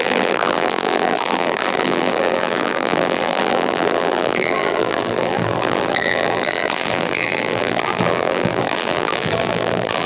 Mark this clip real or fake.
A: fake